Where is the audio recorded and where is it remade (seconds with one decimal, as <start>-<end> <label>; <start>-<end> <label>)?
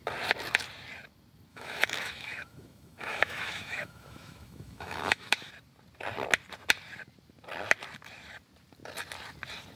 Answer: 0.0-1.5 recorded; 1.5-5.5 remade; 5.5-9.8 recorded